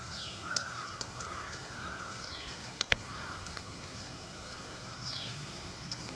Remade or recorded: remade